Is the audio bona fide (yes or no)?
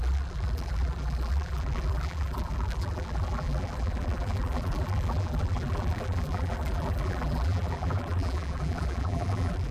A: no